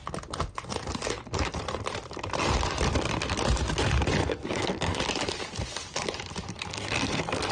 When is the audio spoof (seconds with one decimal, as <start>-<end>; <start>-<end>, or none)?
4.2-5.0; 6.7-7.5